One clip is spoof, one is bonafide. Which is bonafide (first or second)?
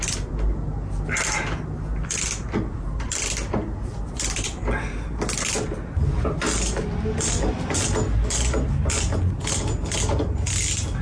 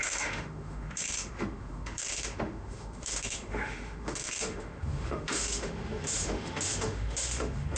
first